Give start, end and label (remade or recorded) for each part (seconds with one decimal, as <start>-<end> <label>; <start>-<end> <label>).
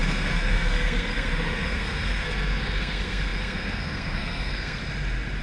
0.0-4.8 remade; 4.8-5.4 recorded